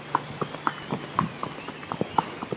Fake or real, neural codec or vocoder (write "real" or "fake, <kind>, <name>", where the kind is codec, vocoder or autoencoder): real